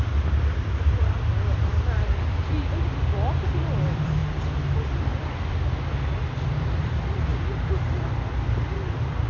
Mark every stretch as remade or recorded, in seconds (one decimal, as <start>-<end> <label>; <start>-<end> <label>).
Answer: 0.0-1.7 remade; 1.7-3.5 recorded; 3.5-4.2 remade; 4.2-4.9 recorded; 4.9-9.3 remade